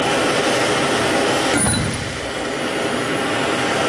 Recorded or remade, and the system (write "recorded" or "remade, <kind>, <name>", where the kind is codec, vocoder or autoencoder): recorded